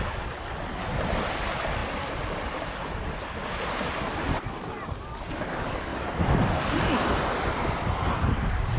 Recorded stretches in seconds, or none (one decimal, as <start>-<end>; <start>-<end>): 0.0-5.9; 8.3-8.8